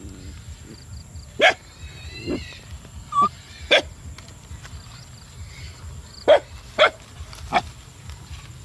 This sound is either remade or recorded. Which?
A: recorded